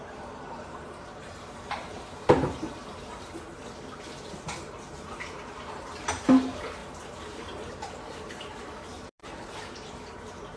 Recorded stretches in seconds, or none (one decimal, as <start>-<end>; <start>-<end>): 3.6-4.2